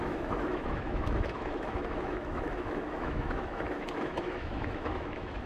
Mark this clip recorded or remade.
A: remade